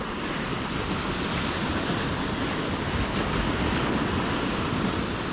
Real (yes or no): yes